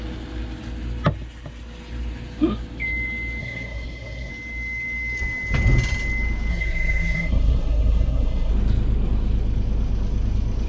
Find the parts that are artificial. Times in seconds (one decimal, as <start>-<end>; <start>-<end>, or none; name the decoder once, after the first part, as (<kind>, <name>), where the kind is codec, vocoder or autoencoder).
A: 3.4-4.3 (codec, SNAC); 6.5-8.5